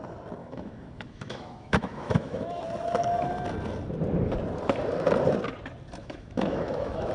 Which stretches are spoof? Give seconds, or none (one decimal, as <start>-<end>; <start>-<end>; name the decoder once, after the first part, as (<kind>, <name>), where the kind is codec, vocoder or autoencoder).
0.4-2.6 (autoencoder, DAC-VAE); 6.0-7.1